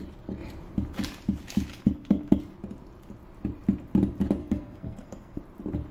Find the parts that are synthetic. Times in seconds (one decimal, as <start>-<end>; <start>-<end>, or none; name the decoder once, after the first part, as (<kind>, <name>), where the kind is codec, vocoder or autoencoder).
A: 1.7-2.4 (codec, SNAC); 4.4-5.4